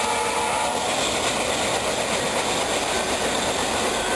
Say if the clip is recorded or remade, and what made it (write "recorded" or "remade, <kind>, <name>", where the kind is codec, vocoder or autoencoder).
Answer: recorded